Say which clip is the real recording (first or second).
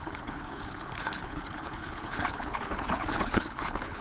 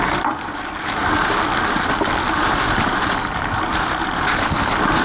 second